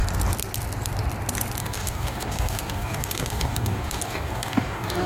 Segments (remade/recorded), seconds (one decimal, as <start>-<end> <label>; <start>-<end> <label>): 0.0-1.6 recorded; 1.6-5.1 remade